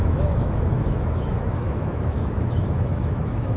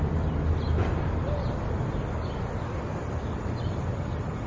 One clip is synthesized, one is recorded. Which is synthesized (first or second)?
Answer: first